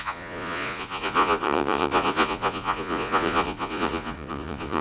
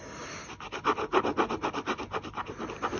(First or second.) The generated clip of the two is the first